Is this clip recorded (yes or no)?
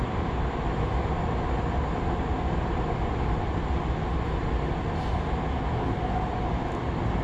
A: yes